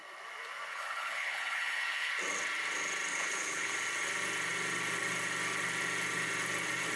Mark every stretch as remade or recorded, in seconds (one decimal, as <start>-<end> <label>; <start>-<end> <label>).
0.0-0.7 recorded; 0.7-2.1 remade; 2.1-3.1 recorded; 3.1-3.7 remade; 3.7-7.0 recorded